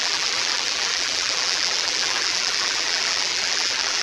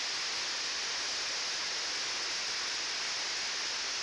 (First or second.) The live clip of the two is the second